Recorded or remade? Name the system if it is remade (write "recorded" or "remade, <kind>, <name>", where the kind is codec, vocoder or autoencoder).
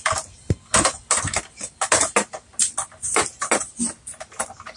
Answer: recorded